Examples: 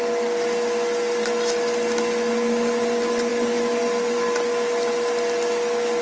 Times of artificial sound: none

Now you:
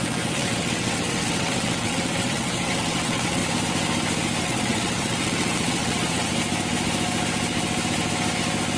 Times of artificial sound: 0.0-3.4; 4.4-6.3

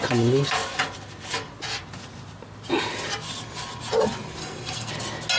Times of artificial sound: 4.4-4.9

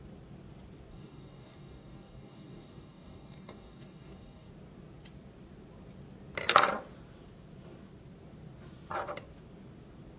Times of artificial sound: 0.9-4.5